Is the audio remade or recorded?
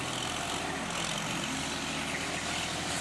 recorded